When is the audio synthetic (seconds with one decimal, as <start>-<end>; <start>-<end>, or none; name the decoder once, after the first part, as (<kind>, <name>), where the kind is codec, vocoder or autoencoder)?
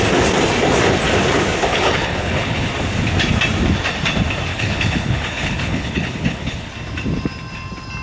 1.7-2.7 (codec, HILCodec); 4.5-6.7